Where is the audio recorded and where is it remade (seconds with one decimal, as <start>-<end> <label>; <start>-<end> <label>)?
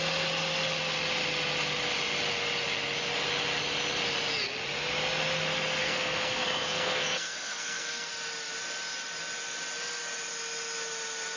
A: 0.0-5.8 recorded; 5.8-8.1 remade; 8.1-11.4 recorded